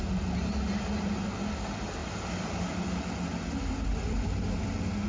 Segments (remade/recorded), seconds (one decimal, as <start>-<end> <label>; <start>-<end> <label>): 0.0-5.1 recorded